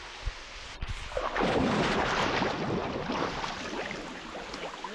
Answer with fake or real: real